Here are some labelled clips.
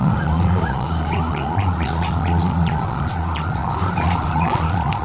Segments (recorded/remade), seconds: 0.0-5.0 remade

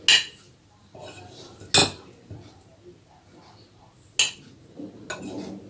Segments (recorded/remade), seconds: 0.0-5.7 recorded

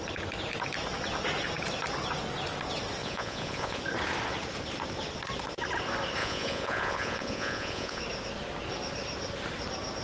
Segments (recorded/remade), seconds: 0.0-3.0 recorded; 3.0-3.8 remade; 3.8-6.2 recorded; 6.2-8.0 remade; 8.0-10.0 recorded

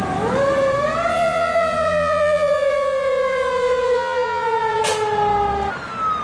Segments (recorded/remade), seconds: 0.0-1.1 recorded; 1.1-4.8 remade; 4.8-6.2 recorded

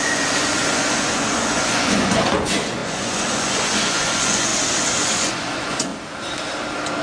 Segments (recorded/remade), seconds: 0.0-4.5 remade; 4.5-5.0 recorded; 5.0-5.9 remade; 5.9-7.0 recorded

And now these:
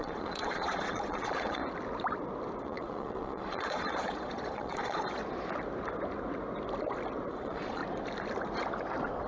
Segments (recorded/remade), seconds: 0.0-1.6 remade; 1.6-2.6 recorded; 2.6-5.2 remade; 5.2-7.3 recorded; 7.3-7.8 remade; 7.8-9.3 recorded